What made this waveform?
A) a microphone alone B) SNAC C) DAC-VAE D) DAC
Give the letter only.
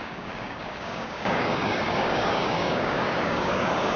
D